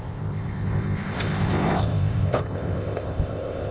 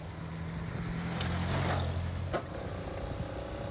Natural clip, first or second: second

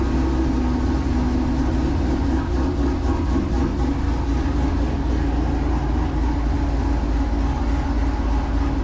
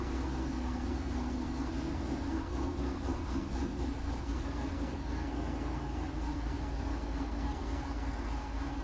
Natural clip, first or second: first